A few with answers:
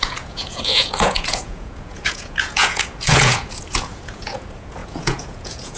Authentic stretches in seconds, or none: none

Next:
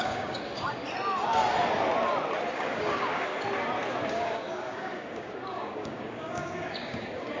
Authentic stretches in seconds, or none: 0.8-2.5; 3.3-4.1

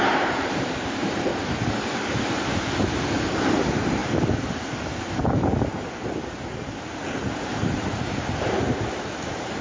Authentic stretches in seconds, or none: 1.3-2.0